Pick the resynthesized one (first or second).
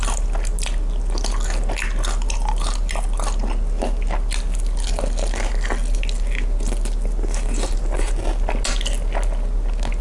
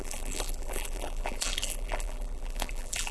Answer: second